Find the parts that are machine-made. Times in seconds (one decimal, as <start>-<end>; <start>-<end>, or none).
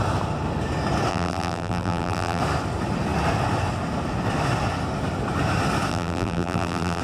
1.1-2.4; 5.9-7.0